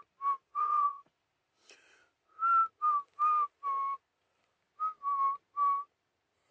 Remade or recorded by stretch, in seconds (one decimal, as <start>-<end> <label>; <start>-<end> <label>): 0.0-0.5 recorded; 0.5-1.1 remade; 1.1-6.5 recorded